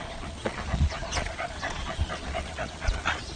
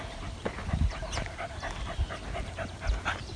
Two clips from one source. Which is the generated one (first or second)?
first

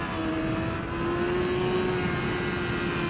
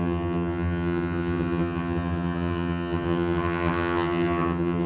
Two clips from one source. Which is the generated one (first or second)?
second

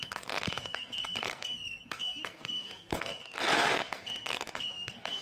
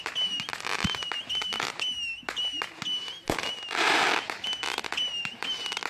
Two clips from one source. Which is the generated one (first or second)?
first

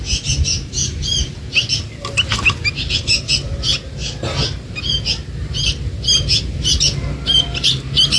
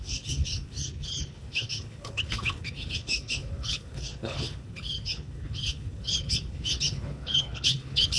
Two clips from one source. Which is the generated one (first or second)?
second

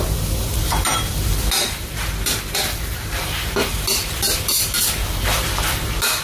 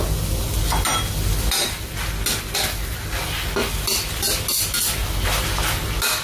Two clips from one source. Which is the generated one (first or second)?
first